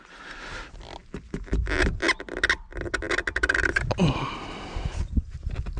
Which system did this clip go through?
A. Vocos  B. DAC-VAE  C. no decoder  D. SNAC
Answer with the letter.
C